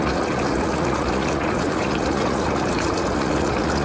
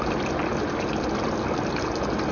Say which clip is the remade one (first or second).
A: first